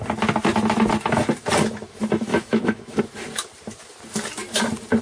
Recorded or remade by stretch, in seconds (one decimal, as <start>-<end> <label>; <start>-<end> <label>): 0.0-2.3 recorded; 2.3-3.0 remade; 3.0-5.0 recorded